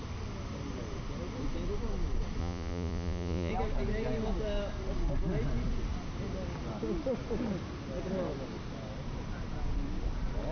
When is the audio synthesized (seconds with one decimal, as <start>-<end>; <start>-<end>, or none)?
2.4-3.5